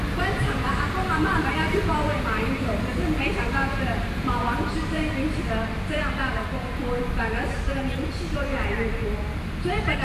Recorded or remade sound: recorded